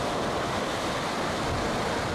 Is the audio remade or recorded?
recorded